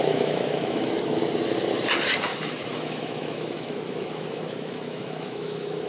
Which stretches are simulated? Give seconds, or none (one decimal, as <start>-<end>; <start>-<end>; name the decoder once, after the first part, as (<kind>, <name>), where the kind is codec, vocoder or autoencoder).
0.0-1.2 (autoencoder, DAC-VAE); 2.3-5.9